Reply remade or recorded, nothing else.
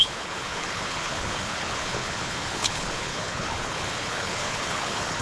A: remade